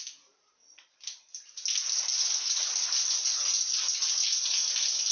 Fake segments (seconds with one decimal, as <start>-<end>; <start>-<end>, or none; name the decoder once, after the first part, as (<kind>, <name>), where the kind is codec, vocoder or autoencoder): none